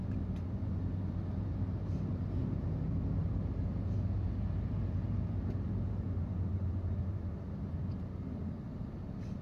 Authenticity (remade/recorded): recorded